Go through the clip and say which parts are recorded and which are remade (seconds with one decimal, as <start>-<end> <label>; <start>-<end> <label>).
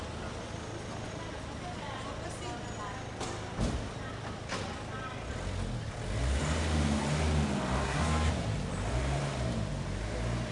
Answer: 0.0-7.8 recorded; 7.8-8.3 remade; 8.3-10.5 recorded